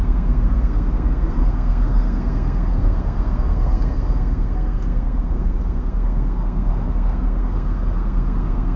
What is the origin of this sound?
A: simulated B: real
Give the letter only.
A